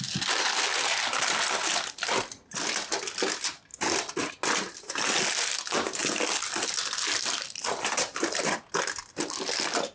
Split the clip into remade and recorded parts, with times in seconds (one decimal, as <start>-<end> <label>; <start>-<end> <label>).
0.0-1.1 recorded; 1.1-2.6 remade; 2.6-3.7 recorded; 3.7-4.3 remade; 4.3-6.0 recorded; 6.0-8.7 remade; 8.7-9.9 recorded